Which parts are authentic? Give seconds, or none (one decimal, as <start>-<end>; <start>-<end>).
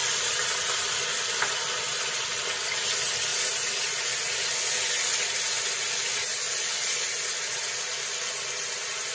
none